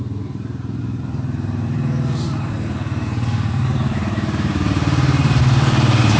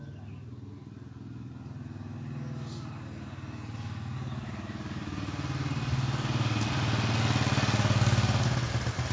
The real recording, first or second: second